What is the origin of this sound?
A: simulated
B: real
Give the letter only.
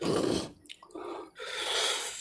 B